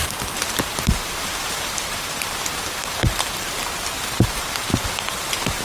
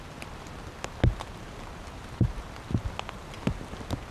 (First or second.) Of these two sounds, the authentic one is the second